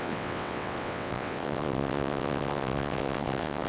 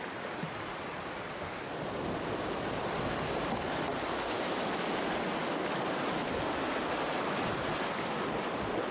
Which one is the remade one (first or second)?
first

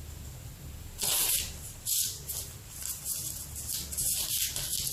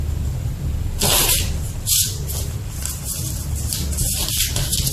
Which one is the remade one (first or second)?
second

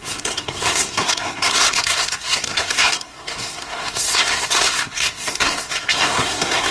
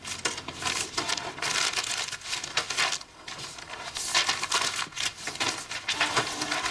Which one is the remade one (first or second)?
first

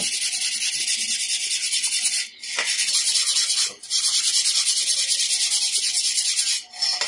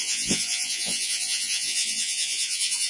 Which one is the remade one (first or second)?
second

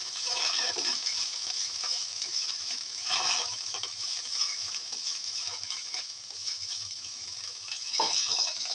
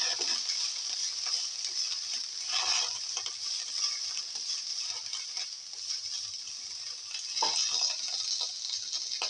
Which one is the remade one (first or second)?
first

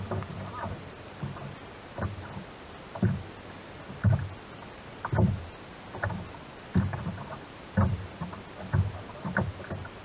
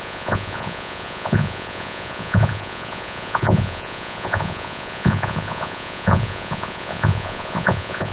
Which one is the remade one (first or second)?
second